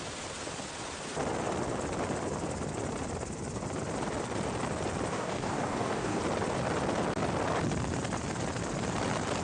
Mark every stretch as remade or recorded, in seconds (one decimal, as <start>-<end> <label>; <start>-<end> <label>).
0.0-5.1 recorded; 5.1-6.2 remade; 6.2-9.4 recorded